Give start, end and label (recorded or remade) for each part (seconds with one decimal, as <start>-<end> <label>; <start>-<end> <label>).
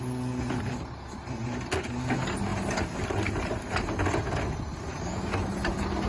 0.0-6.1 recorded